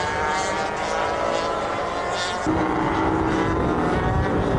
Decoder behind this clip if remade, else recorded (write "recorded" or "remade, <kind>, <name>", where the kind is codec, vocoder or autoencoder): recorded